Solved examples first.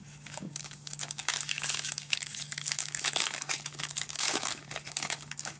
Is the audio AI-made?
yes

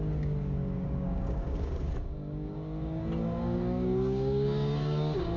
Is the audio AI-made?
yes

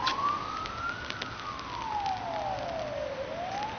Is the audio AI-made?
no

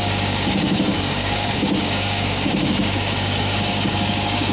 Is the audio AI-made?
yes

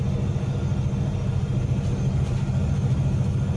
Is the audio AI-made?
no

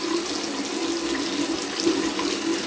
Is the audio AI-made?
no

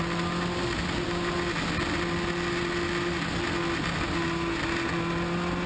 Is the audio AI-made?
no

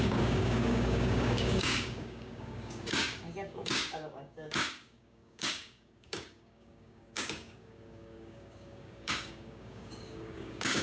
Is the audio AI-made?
yes